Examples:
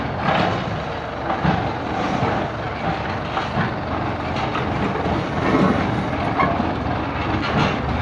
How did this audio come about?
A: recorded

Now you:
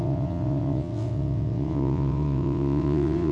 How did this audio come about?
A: remade